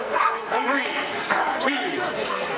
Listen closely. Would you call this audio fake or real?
fake